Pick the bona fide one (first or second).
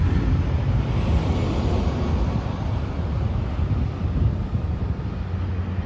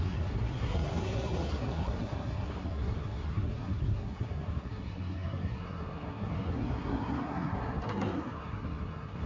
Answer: first